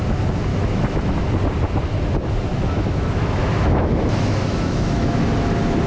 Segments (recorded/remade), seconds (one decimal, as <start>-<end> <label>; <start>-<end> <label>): 0.0-0.5 recorded; 0.5-1.2 remade; 1.2-2.5 recorded; 2.5-5.2 remade; 5.2-5.9 recorded